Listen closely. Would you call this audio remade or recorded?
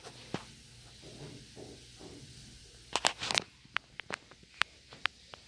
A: recorded